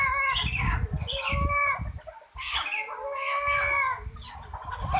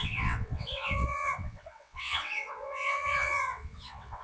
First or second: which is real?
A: first